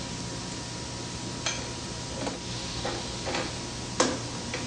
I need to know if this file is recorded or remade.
recorded